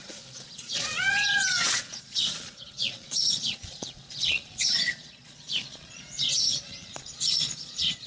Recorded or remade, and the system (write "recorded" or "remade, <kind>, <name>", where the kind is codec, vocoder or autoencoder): remade, vocoder, Vocos